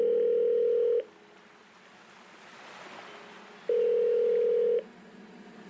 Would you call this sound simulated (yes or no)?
no